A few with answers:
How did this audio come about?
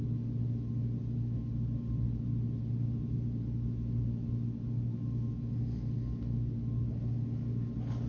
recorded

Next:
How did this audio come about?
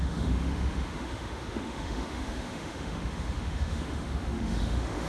remade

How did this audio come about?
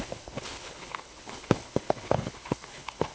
remade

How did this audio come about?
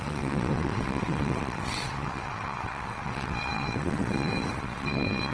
remade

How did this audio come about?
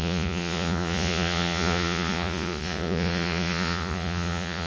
remade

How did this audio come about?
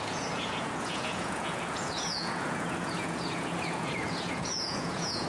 remade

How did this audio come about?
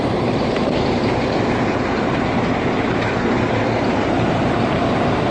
remade